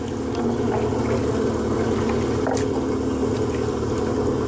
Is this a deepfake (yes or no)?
no